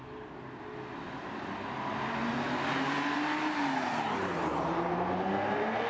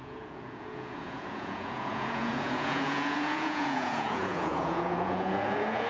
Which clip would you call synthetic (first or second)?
second